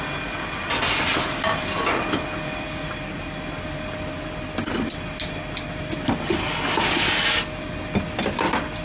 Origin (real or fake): real